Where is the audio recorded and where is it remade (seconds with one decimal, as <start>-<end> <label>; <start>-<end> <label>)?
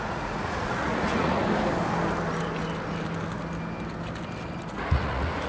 0.0-1.4 remade; 1.4-4.7 recorded; 4.7-5.5 remade